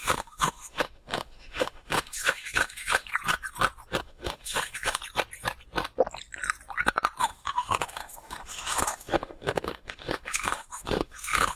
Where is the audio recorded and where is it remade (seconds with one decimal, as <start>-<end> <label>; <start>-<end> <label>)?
0.0-3.1 remade; 3.1-4.0 recorded; 4.0-5.0 remade; 5.0-7.2 recorded; 7.2-11.6 remade